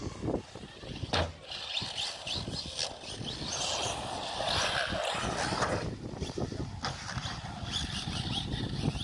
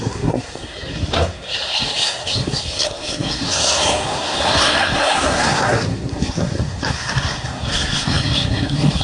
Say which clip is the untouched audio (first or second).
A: first